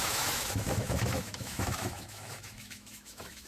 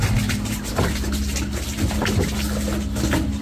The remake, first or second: first